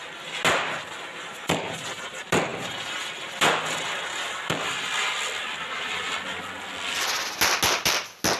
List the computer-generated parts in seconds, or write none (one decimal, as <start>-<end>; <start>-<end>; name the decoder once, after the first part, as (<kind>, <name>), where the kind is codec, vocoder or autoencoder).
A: 2.5-3.4 (vocoder, BigVGAN v2)

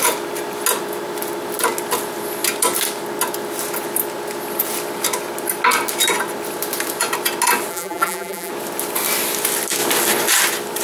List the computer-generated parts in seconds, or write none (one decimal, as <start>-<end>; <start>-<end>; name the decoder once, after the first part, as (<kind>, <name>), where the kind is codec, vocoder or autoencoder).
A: 7.7-8.5 (vocoder, BigVGAN v2)

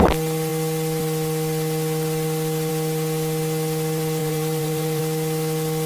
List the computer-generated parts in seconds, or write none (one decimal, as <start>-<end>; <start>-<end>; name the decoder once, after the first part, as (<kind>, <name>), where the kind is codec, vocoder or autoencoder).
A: 4.2-5.0 (vocoder, BigVGAN v2)

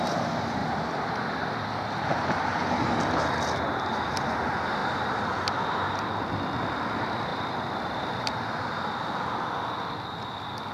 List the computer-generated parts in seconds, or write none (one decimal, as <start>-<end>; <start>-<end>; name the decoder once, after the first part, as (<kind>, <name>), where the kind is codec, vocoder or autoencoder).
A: 4.8-6.2 (vocoder, BigVGAN v2); 7.3-9.2